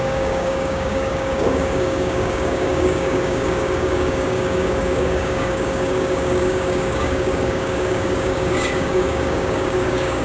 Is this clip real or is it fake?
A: fake